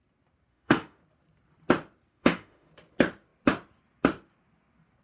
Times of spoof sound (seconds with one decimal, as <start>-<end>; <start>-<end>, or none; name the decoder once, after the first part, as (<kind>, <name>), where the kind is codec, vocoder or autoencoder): 0.5-1.0 (autoencoder, DAC-VAE); 2.1-2.7